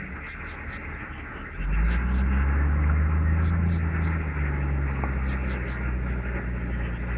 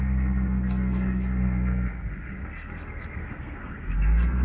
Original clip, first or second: first